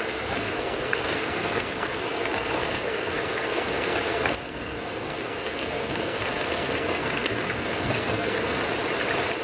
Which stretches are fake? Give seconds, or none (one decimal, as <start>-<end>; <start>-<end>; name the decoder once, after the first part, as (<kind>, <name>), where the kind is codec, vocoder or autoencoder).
0.0-8.6 (codec, SNAC)